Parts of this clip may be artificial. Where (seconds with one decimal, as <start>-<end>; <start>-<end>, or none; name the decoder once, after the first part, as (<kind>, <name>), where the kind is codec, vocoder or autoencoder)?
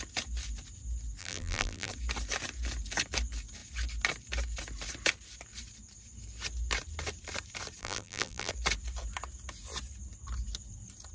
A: 1.2-1.9 (vocoder, BigVGAN v2); 7.8-8.5